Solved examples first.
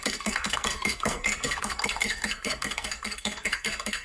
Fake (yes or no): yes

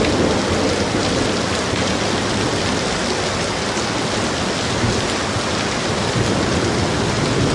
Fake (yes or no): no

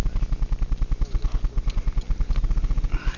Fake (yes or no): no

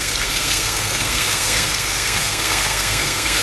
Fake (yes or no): yes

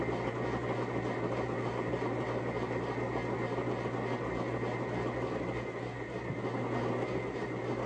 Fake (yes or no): no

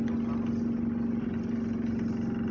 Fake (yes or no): no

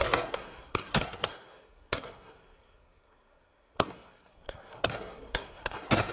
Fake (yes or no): yes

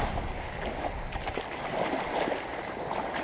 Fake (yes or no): no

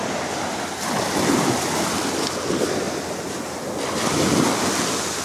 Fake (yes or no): no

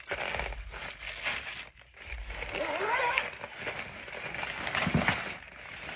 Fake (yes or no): no